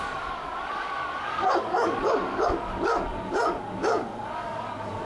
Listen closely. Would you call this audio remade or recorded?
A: remade